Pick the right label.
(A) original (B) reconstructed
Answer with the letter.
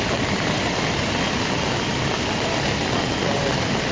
A